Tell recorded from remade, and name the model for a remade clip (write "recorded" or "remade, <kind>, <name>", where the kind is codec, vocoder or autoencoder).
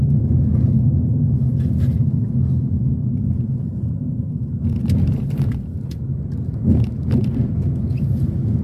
recorded